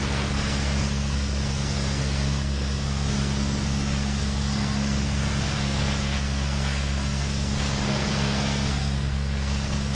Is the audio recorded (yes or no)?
no